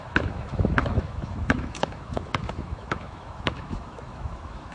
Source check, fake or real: fake